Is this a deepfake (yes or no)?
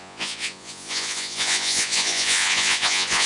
yes